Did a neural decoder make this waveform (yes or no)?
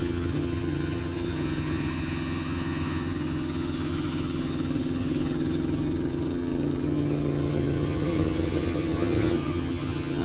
yes